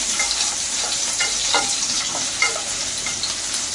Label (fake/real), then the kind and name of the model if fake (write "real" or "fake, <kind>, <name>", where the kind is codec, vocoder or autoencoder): fake, vocoder, BigVGAN v2